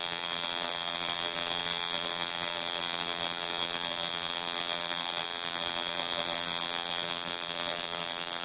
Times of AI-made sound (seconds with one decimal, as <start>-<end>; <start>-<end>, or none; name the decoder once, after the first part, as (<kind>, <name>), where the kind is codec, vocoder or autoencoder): 0.0-8.4 (vocoder, BigVGAN v2)